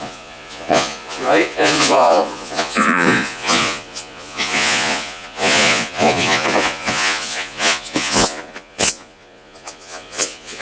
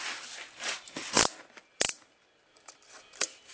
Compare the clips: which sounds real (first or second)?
second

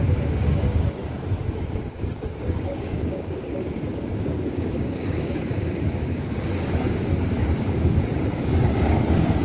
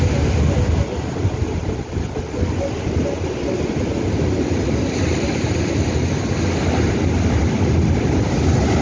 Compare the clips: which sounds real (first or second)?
second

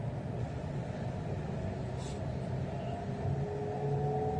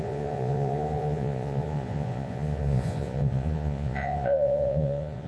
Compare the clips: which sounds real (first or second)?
first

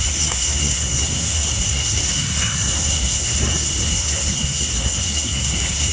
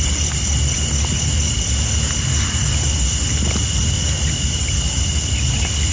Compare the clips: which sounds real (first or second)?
second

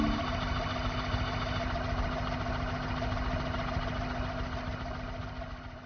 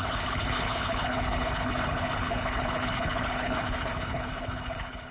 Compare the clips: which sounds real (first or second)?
first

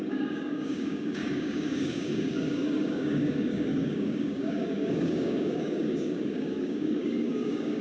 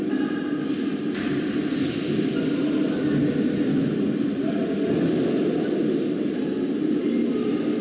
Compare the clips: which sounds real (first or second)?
second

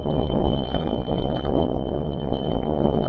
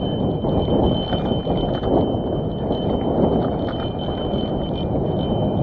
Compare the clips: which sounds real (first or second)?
second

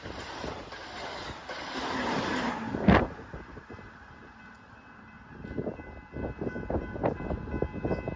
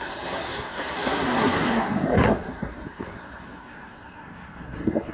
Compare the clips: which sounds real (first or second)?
first